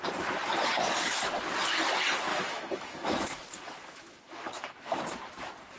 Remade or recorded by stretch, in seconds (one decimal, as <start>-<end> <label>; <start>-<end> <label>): 0.0-2.3 recorded; 2.3-5.0 remade; 5.0-5.8 recorded